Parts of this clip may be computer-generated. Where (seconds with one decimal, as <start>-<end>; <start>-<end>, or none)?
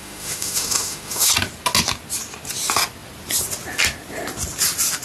0.0-1.3